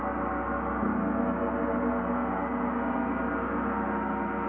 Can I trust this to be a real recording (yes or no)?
yes